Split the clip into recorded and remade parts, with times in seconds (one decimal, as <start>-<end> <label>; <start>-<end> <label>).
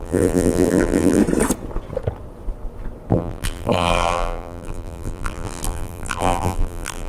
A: 0.0-1.2 remade; 1.2-3.1 recorded; 3.1-7.1 remade